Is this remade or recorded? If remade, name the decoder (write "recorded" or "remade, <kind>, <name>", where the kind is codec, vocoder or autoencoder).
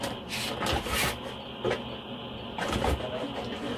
recorded